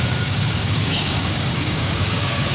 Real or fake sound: fake